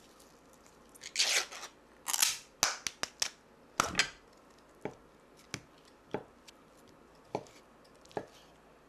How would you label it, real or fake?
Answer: real